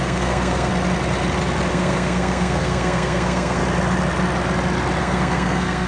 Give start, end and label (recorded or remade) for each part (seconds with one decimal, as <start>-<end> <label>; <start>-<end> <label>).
0.0-0.7 remade; 0.7-1.7 recorded; 1.7-3.6 remade; 3.6-5.0 recorded; 5.0-5.9 remade